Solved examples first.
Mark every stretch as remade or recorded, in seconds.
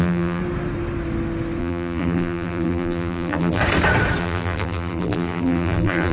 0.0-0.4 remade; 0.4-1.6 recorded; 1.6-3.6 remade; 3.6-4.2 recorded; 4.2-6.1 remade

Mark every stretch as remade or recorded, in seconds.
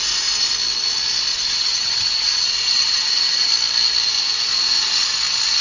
0.0-1.3 recorded; 1.3-3.5 remade; 3.5-5.6 recorded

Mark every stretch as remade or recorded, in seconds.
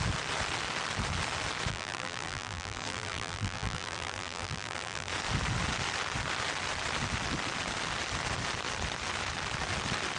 0.0-1.7 recorded; 1.7-5.1 remade; 5.1-10.2 recorded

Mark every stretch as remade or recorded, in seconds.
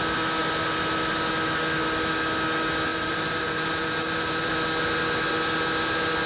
0.0-2.9 recorded; 2.9-4.5 remade; 4.5-6.3 recorded